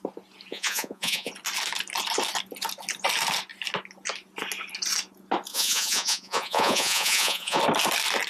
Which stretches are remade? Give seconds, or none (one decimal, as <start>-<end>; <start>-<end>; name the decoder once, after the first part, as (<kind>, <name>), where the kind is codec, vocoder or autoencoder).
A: 0.5-1.3 (vocoder, Vocos); 5.5-7.6